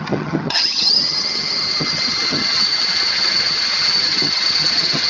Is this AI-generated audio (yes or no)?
yes